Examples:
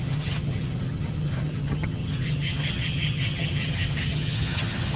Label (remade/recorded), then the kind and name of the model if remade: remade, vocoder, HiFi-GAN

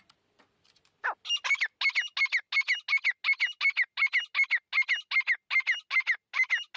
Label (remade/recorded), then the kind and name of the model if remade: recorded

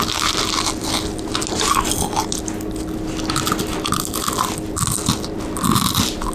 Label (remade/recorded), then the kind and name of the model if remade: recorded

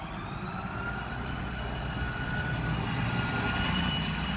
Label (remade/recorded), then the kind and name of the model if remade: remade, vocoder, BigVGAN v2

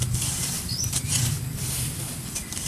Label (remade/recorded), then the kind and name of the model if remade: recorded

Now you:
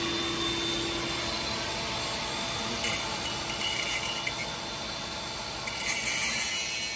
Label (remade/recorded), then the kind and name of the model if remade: recorded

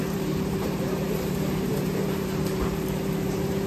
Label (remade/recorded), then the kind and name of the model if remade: remade, vocoder, BigVGAN v2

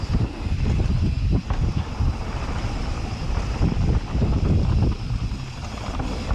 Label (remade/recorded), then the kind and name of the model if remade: recorded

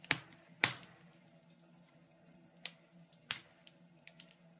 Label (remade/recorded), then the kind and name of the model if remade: recorded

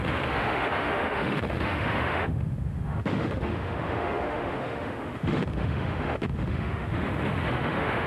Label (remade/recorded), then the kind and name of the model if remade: remade, autoencoder, DAC-VAE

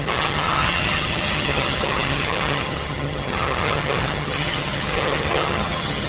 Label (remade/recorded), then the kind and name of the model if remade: remade, vocoder, HiFi-GAN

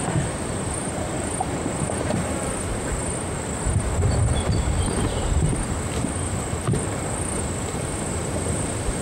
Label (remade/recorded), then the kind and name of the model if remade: remade, vocoder, BigVGAN v2